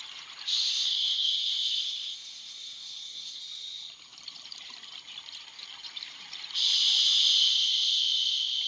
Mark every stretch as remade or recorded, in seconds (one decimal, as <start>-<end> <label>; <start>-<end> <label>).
0.0-0.7 recorded; 0.7-3.4 remade; 3.4-8.7 recorded